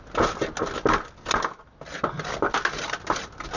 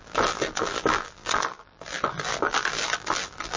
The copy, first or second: second